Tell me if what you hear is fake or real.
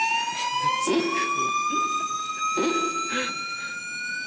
real